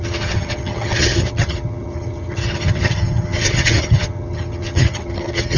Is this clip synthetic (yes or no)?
yes